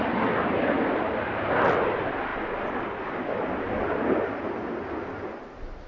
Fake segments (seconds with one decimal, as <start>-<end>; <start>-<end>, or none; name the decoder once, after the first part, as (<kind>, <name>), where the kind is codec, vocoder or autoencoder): none